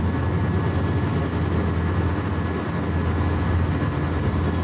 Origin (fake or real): real